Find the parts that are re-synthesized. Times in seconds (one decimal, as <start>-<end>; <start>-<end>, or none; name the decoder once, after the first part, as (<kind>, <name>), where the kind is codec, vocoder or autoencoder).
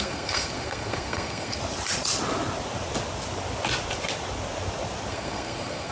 0.0-1.6 (codec, SNAC); 5.1-5.9